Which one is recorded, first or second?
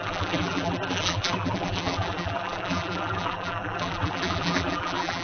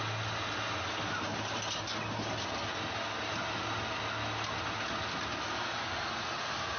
second